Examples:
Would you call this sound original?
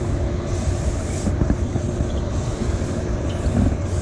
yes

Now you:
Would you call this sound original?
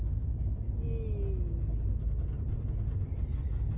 yes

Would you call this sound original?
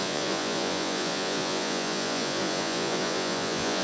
no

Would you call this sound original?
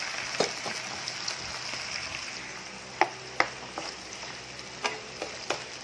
yes